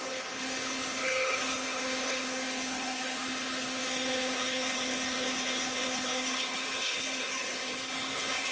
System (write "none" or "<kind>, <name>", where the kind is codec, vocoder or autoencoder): codec, HILCodec